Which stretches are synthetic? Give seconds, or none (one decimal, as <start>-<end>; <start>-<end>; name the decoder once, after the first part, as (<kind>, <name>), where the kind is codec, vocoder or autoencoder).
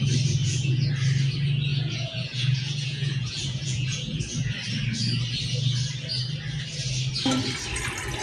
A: 0.4-0.9 (vocoder, Vocos); 1.7-4.2